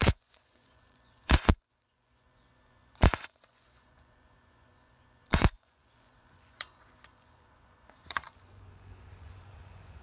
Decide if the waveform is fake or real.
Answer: fake